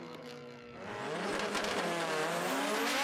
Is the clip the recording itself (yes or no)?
yes